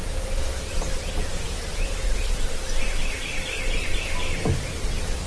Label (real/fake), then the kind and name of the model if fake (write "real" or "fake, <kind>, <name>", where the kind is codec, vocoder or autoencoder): real